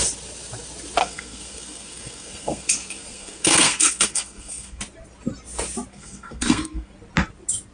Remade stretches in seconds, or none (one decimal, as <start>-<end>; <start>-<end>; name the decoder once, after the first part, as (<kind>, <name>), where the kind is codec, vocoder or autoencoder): 1.0-4.8 (codec, SNAC); 5.9-6.9